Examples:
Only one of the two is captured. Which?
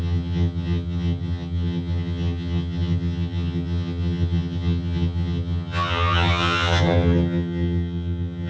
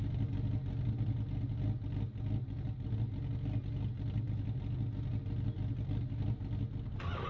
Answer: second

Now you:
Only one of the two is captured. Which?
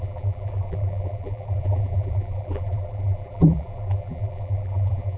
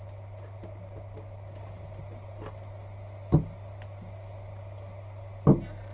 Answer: second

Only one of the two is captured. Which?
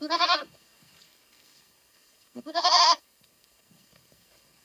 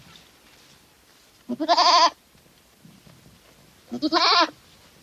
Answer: second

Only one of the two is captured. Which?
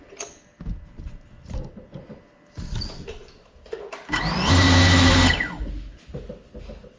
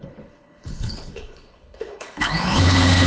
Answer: first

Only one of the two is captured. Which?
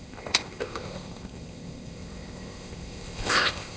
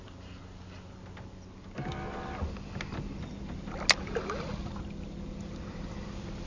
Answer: second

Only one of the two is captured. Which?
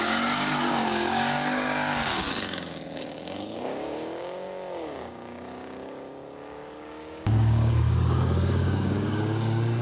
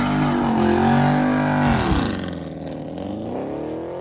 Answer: second